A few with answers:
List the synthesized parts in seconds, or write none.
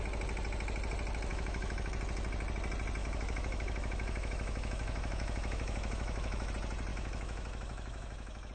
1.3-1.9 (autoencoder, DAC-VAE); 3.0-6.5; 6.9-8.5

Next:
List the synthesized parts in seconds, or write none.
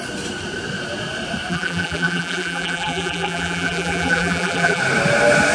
1.5-4.8 (vocoder, BigVGAN v2)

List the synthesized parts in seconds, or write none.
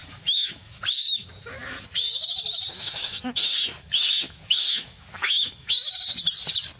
0.0-1.3 (autoencoder, DAC-VAE); 2.7-5.7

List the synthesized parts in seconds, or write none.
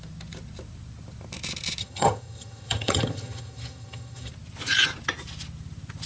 1.8-4.3 (vocoder, HiFi-GAN)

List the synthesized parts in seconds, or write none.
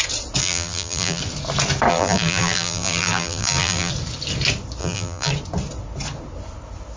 0.4-1.2 (vocoder, BigVGAN v2); 1.9-3.9; 4.8-5.3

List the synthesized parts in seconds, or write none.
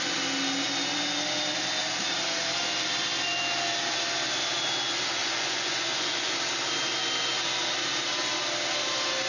5.2-6.3 (vocoder, Vocos)